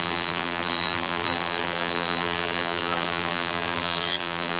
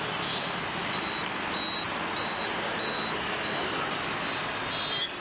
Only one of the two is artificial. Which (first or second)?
first